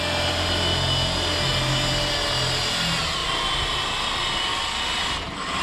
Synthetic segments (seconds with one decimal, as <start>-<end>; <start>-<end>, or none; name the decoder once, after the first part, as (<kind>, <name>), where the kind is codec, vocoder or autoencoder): none